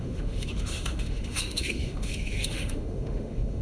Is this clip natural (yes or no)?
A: no